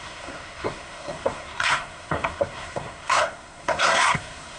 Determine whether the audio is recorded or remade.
remade